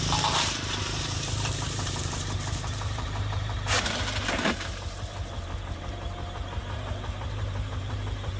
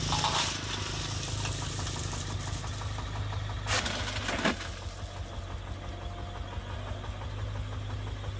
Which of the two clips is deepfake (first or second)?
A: first